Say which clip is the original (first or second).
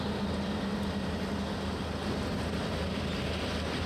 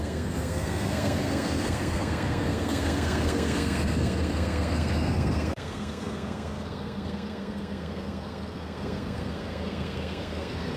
first